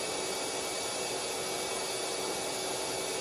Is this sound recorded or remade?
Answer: recorded